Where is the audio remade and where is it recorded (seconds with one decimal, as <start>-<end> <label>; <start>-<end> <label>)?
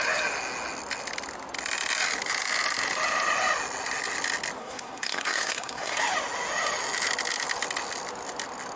0.0-4.6 recorded; 4.6-6.0 remade; 6.0-8.8 recorded